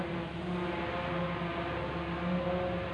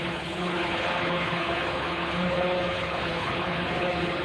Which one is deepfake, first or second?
second